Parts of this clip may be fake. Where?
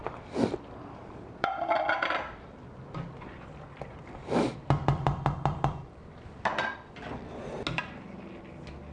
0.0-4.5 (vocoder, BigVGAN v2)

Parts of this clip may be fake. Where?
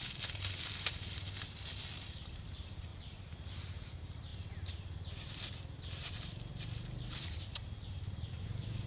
2.3-2.9 (vocoder, BigVGAN v2); 3.7-4.3; 6.5-8.9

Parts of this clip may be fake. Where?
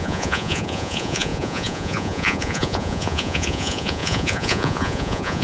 0.0-5.4 (vocoder, Vocos)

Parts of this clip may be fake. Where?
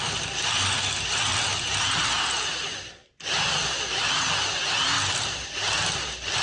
none